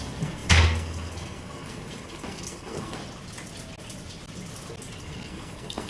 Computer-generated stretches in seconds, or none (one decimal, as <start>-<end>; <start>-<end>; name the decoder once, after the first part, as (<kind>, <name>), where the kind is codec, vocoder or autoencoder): 0.0-3.0 (codec, SNAC); 5.0-5.9